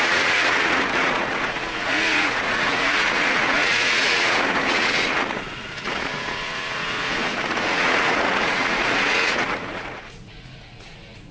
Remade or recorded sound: remade